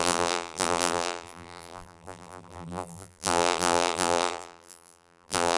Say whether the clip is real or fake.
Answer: fake